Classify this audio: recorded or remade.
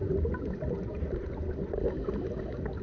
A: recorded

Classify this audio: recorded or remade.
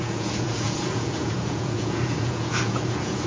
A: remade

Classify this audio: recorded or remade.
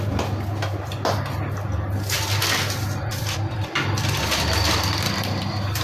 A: remade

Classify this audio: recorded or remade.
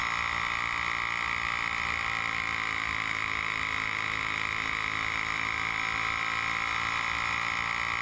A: recorded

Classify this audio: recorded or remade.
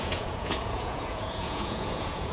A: remade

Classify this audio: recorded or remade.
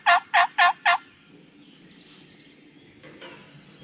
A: recorded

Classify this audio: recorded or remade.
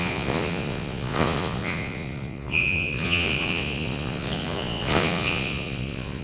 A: remade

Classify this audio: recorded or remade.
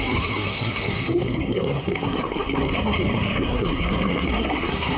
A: remade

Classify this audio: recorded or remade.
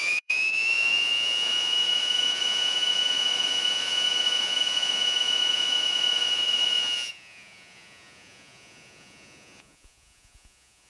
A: remade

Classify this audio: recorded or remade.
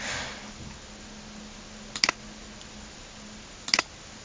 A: recorded